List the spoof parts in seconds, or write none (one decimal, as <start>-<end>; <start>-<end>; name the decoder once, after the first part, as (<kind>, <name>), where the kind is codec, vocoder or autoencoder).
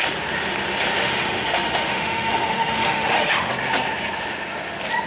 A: 1.0-3.5 (autoencoder, DAC-VAE)